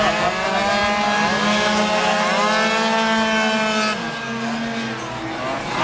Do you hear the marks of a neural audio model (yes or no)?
no